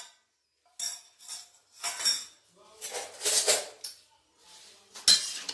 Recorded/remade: recorded